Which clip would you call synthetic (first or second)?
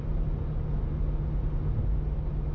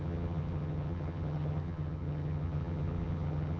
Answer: second